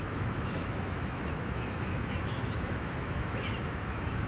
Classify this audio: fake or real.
fake